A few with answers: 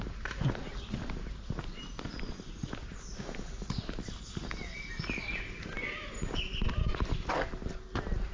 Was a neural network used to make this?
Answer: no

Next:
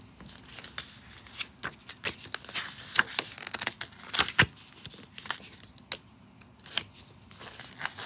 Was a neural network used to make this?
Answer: no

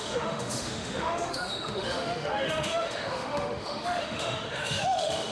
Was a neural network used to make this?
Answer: yes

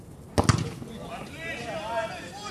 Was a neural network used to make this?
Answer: no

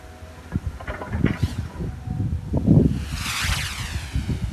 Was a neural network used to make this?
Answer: no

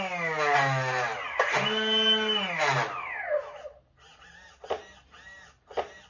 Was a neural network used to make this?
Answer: no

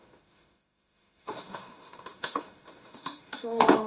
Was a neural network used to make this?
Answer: yes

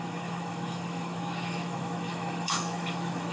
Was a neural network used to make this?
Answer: yes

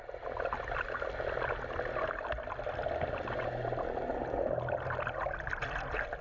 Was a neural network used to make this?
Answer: no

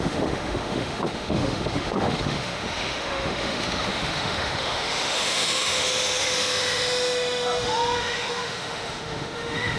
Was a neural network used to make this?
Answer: yes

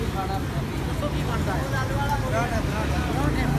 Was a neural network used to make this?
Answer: no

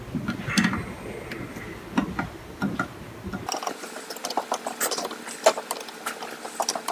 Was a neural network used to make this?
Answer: no